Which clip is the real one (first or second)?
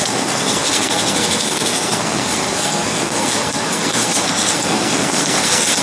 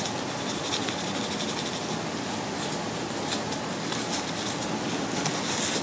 second